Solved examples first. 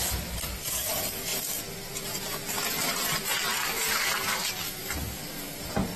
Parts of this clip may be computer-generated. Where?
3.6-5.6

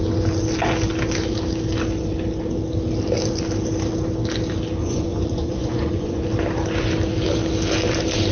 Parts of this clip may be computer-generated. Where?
4.8-6.2

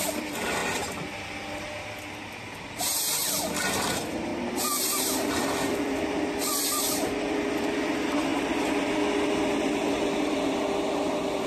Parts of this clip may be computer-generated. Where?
0.0-0.6; 3.7-4.3; 5.3-8.3

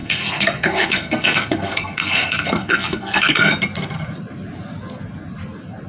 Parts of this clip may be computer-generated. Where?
0.0-3.5

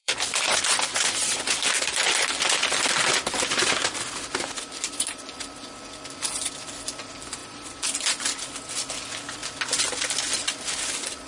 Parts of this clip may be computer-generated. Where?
0.0-1.4; 7.4-8.9